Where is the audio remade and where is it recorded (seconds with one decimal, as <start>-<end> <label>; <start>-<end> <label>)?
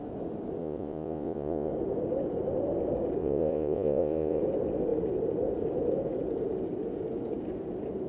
0.0-0.6 recorded; 0.6-1.7 remade; 1.7-3.2 recorded; 3.2-4.4 remade; 4.4-8.1 recorded